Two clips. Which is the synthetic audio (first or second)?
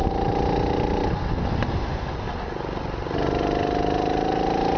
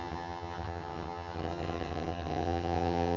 second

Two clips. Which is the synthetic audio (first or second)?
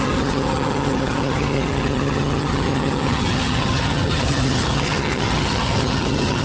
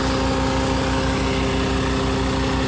first